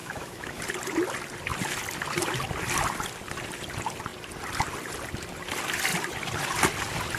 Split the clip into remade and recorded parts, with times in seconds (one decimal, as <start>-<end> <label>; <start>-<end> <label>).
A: 0.0-0.6 remade; 0.6-7.2 recorded